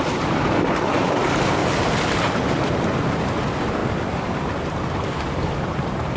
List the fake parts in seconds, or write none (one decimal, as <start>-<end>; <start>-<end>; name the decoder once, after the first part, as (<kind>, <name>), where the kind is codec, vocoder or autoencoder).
0.0-6.2 (vocoder, BigVGAN v2)